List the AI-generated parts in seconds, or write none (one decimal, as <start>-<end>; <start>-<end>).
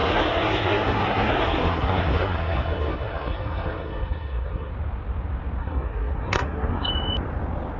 0.0-4.7; 5.6-6.9